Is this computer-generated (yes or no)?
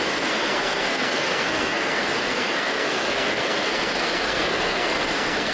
yes